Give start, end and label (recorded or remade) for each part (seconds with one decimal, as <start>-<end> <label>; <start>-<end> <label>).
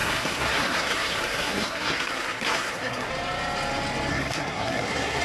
0.0-3.1 remade; 3.1-4.1 recorded; 4.1-5.2 remade